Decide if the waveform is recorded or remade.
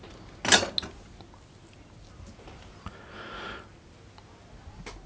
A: recorded